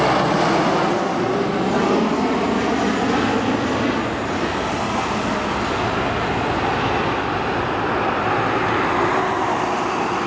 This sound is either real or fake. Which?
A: real